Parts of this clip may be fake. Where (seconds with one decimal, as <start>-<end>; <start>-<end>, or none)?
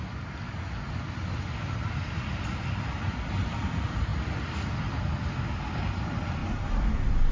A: none